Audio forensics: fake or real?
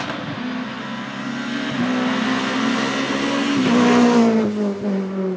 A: real